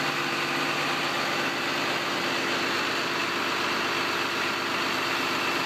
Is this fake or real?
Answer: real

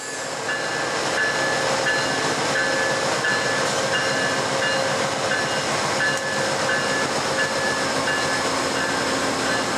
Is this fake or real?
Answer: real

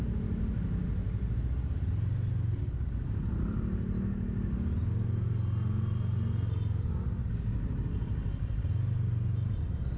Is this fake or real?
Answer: real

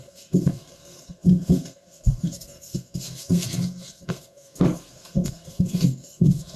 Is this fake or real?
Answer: fake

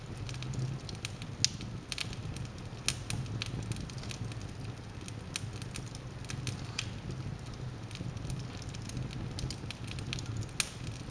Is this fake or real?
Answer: real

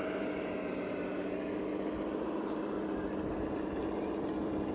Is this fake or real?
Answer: real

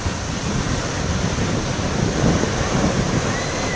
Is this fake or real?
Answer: real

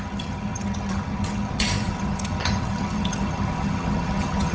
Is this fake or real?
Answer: fake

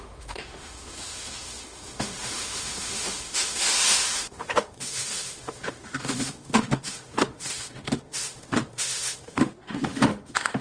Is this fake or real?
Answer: fake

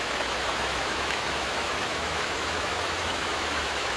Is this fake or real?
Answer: fake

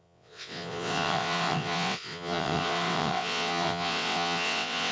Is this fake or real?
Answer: fake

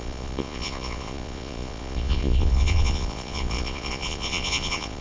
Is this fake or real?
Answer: fake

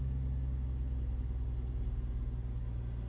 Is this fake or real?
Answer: real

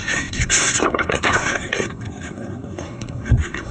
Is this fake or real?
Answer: fake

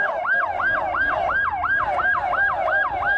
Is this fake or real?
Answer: real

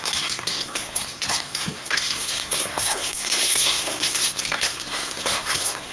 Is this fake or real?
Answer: fake